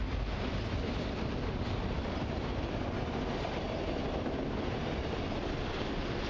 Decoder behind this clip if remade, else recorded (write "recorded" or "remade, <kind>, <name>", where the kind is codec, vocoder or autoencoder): recorded